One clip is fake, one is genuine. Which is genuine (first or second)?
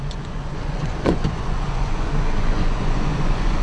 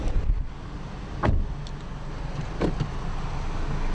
second